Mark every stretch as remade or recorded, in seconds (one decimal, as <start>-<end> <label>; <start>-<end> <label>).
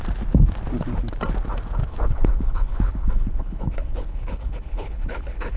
0.0-1.8 recorded; 1.8-5.6 remade